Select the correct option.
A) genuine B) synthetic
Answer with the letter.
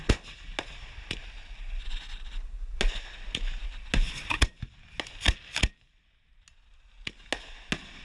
A